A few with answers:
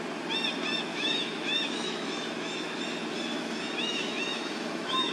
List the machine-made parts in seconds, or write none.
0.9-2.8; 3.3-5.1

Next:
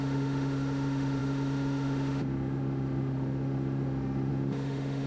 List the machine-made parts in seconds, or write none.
0.0-5.1

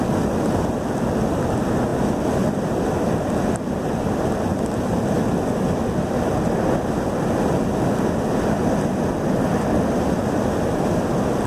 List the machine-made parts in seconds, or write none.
none

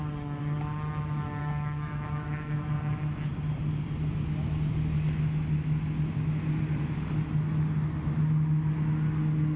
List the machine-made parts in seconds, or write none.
1.4-2.7

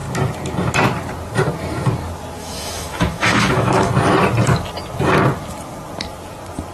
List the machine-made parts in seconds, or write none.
2.4-3.9